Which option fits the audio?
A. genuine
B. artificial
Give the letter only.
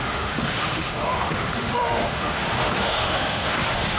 B